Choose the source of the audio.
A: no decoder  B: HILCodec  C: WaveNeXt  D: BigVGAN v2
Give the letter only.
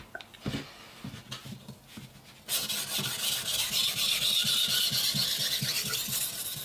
A